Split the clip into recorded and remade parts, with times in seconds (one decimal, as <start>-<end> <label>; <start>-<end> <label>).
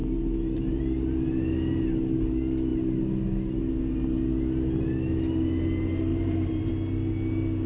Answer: 0.0-0.8 remade; 0.8-6.1 recorded; 6.1-6.7 remade; 6.7-7.7 recorded